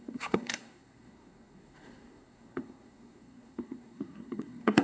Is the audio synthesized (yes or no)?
yes